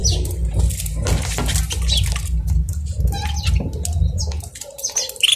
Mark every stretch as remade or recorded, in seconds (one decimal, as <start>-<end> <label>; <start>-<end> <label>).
0.0-5.4 recorded